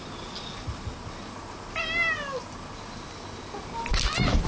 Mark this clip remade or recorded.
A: recorded